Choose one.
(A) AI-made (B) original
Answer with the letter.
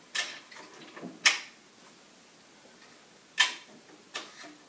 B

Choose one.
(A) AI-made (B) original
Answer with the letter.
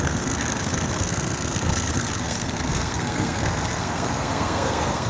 A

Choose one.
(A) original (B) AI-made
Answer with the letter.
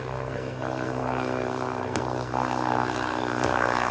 B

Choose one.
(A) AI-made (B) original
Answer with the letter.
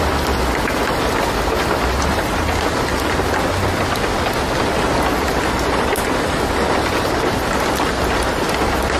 B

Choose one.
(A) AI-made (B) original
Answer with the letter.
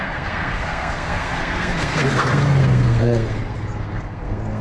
A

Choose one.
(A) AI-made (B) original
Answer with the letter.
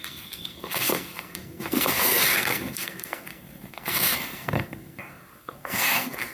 A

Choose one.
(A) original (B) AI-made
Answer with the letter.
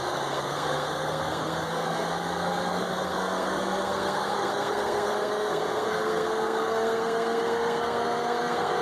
B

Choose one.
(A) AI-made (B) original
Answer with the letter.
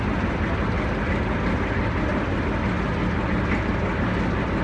B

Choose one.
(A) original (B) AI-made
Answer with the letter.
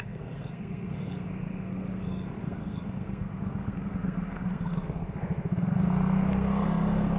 B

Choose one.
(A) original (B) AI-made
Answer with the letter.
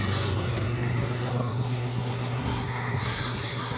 B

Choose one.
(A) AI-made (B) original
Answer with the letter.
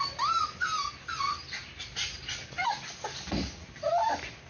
B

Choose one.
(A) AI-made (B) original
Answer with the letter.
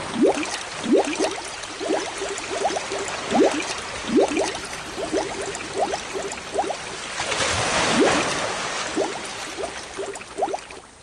B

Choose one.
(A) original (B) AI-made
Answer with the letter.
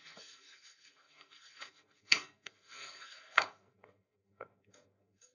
B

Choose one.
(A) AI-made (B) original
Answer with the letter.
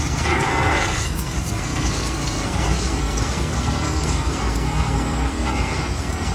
A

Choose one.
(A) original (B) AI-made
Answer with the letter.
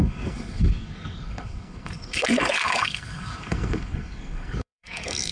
B